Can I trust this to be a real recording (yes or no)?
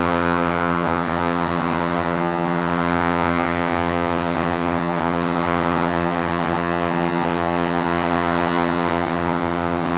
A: no